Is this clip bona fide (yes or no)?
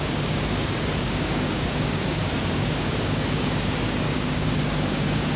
no